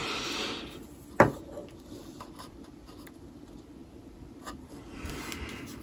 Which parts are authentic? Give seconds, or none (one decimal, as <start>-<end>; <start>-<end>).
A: 0.0-1.6; 3.1-3.8; 5.1-5.8